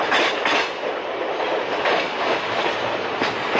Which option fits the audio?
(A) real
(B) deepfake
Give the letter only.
B